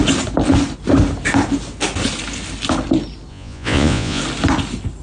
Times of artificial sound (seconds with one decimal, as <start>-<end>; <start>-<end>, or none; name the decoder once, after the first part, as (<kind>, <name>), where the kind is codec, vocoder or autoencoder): 3.3-4.2 (vocoder, Vocos)